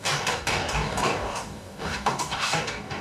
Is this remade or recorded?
remade